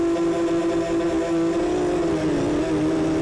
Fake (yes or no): no